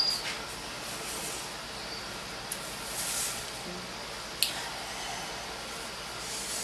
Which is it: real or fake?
real